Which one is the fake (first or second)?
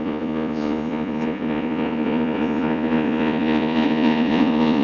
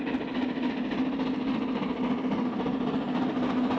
first